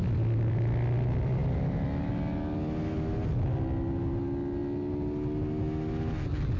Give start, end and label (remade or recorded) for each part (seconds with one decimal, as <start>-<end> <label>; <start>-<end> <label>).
0.0-6.6 recorded